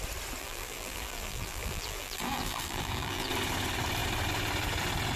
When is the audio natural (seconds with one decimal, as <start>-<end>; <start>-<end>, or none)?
0.0-0.4; 3.3-5.2